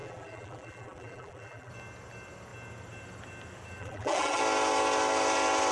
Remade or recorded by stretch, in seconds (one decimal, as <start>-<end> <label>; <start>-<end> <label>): 0.0-1.7 remade; 1.7-3.8 recorded; 3.8-4.4 remade; 4.4-5.7 recorded